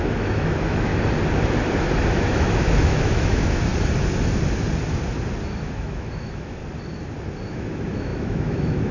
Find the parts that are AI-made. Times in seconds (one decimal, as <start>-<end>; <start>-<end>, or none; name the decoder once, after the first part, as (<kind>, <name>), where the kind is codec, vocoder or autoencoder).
0.0-0.9 (autoencoder, DAC-VAE); 2.1-3.7; 5.5-6.6; 7.5-8.9